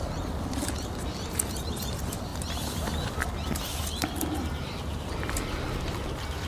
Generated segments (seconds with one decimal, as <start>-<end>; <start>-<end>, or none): none